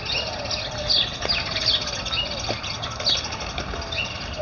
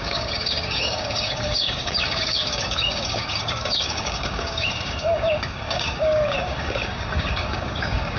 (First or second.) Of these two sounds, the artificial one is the second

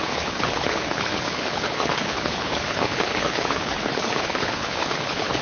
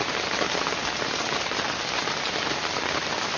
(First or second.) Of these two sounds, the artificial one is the first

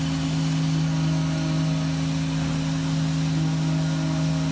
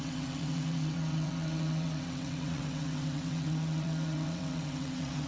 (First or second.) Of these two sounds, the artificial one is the second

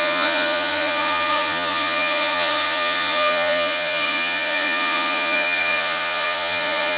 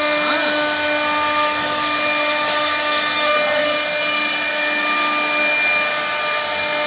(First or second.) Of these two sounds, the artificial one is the first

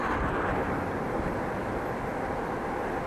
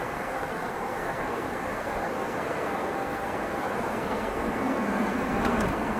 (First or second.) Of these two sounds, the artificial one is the second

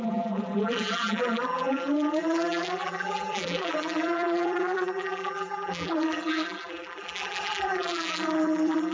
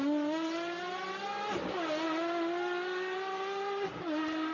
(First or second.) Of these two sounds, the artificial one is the first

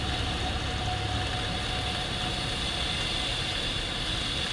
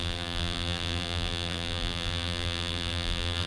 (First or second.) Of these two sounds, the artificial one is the second